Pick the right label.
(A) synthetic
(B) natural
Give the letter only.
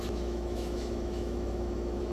A